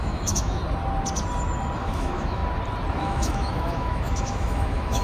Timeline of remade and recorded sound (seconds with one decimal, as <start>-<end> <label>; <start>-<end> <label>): 0.0-0.6 remade; 0.6-1.8 recorded; 1.8-2.4 remade; 2.4-3.0 recorded; 3.0-5.0 remade